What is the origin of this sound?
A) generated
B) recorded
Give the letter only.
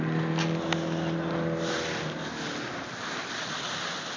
B